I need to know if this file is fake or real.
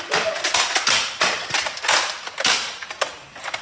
real